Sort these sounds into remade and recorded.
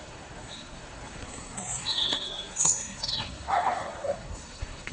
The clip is remade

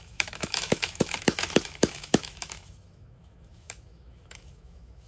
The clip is remade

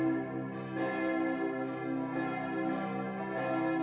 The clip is recorded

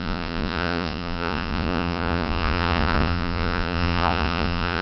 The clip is remade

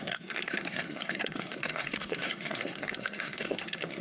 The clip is remade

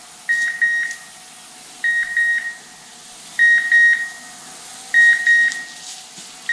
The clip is recorded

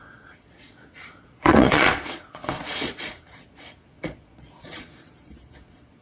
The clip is remade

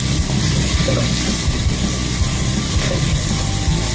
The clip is recorded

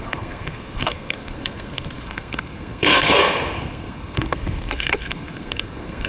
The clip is remade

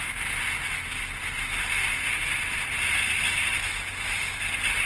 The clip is recorded